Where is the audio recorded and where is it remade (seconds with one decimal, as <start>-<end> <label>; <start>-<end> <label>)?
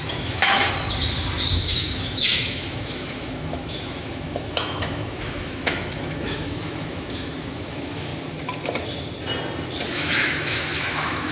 0.0-0.6 remade; 0.6-1.5 recorded; 1.5-8.1 remade; 8.1-9.9 recorded; 9.9-11.3 remade